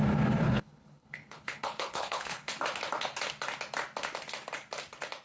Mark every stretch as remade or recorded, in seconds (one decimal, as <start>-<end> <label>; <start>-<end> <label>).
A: 0.0-0.4 recorded; 0.4-2.5 remade; 2.5-5.2 recorded

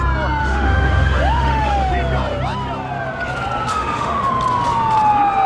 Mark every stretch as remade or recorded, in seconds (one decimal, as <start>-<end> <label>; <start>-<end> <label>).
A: 0.0-0.4 recorded; 0.4-1.9 remade; 1.9-3.7 recorded; 3.7-4.3 remade; 4.3-5.5 recorded

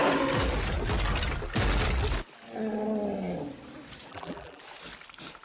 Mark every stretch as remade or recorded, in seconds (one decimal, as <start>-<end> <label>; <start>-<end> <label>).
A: 0.0-4.1 recorded; 4.1-4.6 remade; 4.6-5.4 recorded

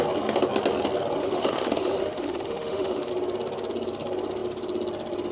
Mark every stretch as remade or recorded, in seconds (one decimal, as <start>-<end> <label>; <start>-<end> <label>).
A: 0.0-1.2 recorded; 1.2-3.1 remade; 3.1-5.3 recorded

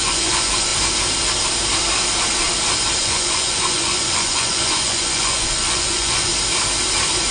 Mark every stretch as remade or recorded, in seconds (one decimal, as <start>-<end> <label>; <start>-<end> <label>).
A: 0.0-0.7 remade; 0.7-3.0 recorded; 3.0-6.3 remade; 6.3-7.3 recorded

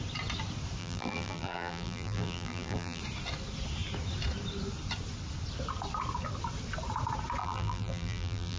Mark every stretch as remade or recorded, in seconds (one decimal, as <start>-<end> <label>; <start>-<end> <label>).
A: 0.0-0.8 recorded; 0.8-3.0 remade; 3.0-7.4 recorded; 7.4-8.6 remade

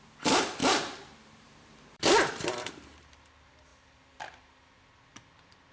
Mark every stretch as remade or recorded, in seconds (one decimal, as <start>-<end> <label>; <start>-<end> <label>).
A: 0.0-0.6 recorded; 0.6-3.3 remade; 3.3-5.7 recorded

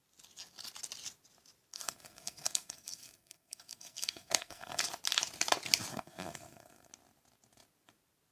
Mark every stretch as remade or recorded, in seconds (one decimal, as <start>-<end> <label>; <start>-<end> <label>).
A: 0.0-1.7 recorded; 1.7-4.8 remade; 4.8-5.9 recorded; 5.9-6.9 remade; 6.9-8.3 recorded